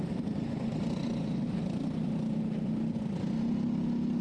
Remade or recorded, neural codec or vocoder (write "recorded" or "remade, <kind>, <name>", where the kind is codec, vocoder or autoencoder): recorded